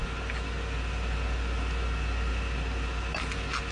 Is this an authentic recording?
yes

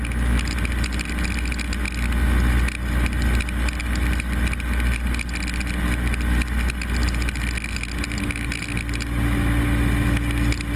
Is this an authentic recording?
yes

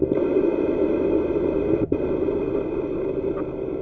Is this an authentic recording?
yes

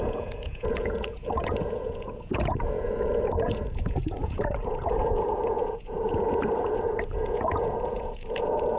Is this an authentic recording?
no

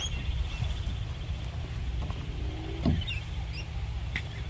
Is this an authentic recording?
yes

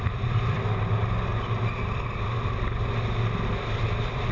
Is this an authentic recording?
yes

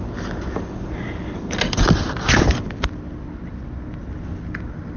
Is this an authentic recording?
yes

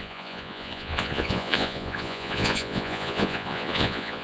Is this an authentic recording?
no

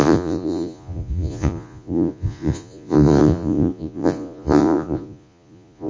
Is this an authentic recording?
no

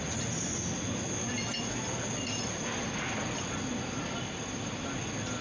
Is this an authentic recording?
yes